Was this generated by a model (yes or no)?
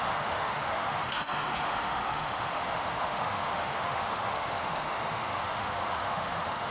yes